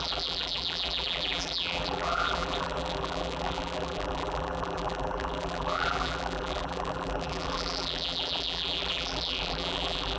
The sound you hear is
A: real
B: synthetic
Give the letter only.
B